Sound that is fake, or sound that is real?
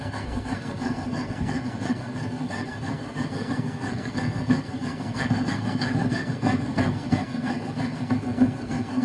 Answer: fake